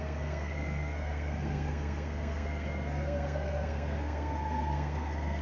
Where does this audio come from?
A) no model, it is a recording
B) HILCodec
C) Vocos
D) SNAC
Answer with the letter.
D